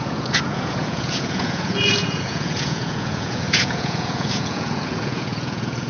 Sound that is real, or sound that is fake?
fake